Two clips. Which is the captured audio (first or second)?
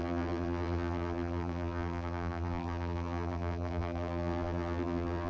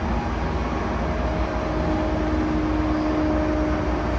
second